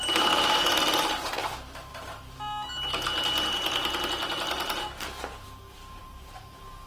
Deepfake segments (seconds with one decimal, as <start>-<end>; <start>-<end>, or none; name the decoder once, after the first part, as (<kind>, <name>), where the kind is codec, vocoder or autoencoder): 0.0-1.9 (vocoder, BigVGAN v2); 6.0-6.9